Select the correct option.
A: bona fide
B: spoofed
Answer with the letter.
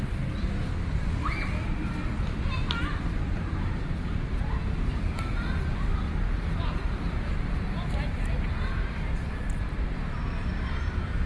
A